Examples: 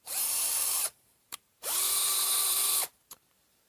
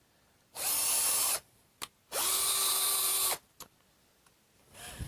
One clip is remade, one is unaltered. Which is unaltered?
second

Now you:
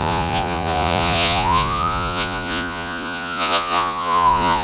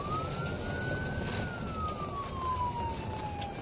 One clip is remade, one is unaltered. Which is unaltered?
second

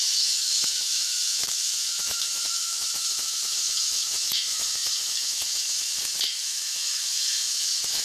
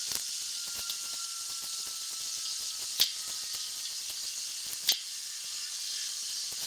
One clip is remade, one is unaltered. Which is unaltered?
second